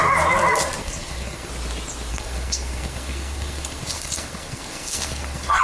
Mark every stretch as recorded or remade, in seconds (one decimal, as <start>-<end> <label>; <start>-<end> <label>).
0.0-0.8 recorded; 0.8-1.5 remade; 1.5-2.1 recorded; 2.1-5.6 remade